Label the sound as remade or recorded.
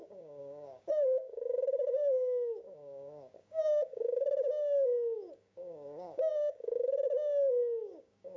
remade